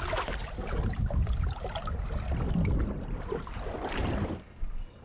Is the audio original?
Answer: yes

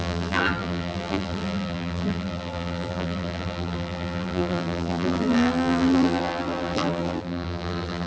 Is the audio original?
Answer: no